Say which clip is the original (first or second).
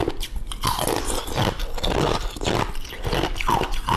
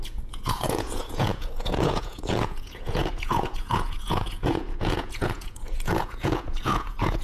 first